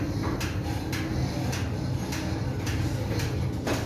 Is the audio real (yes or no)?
yes